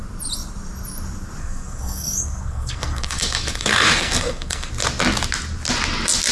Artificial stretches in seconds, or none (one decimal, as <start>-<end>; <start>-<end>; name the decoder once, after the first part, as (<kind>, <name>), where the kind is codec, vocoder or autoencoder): 1.4-4.7 (codec, SNAC)

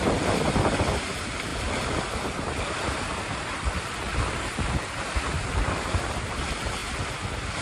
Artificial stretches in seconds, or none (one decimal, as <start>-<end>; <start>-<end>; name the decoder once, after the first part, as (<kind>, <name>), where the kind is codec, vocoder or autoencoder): 0.0-6.8 (vocoder, BigVGAN v2)

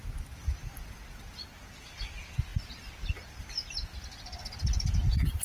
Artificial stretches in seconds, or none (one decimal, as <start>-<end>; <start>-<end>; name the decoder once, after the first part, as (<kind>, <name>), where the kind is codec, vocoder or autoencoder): none